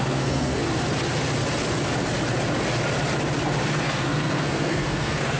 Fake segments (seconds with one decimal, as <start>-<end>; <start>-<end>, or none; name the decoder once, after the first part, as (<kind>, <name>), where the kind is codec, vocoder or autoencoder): 0.0-0.6 (codec, SNAC); 3.8-5.4